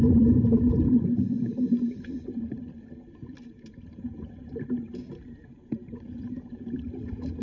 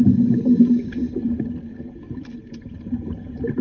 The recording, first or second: second